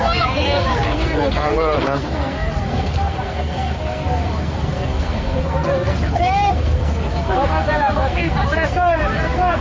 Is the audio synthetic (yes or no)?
yes